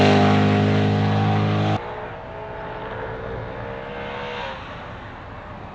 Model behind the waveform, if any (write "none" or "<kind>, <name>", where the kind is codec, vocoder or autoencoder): none